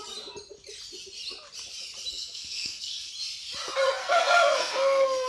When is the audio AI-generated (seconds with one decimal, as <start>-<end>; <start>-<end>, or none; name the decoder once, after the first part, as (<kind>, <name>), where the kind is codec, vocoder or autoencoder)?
2.1-3.1 (codec, SNAC); 4.0-5.3